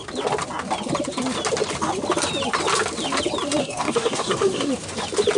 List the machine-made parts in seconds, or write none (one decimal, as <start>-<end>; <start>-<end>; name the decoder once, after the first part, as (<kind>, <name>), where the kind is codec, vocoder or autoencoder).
3.6-4.7 (codec, SNAC)